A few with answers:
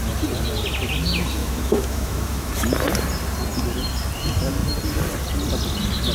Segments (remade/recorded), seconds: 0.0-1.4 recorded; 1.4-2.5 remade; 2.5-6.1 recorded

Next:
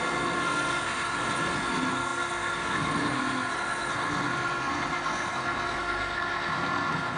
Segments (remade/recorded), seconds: 0.0-7.2 remade

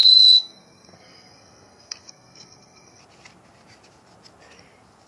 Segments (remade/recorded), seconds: 0.0-3.0 remade; 3.0-5.1 recorded